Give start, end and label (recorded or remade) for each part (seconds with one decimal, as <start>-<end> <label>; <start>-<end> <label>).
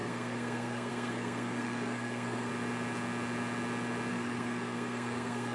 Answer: 0.0-2.5 remade; 2.5-4.1 recorded; 4.1-5.5 remade